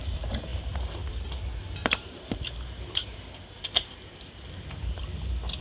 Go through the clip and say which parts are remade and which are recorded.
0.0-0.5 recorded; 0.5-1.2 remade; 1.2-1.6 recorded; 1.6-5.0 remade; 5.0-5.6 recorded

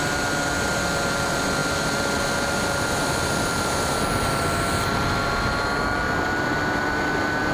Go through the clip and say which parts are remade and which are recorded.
0.0-7.5 recorded

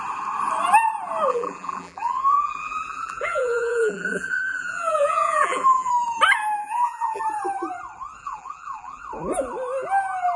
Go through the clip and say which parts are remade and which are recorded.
0.0-1.3 recorded; 1.3-5.9 remade; 5.9-6.6 recorded; 6.6-7.2 remade; 7.2-8.2 recorded; 8.2-9.0 remade; 9.0-10.4 recorded

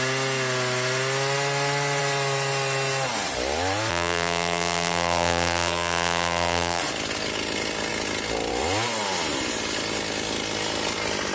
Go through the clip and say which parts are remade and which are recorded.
0.0-3.9 recorded; 3.9-6.8 remade; 6.8-11.3 recorded